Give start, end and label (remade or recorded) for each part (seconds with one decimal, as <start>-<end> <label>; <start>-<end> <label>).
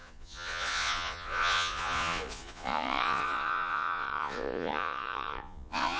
0.0-6.0 remade